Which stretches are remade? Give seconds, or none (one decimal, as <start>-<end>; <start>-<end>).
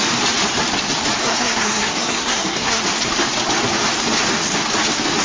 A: 1.2-2.8